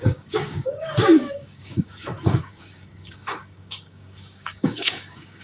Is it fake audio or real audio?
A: fake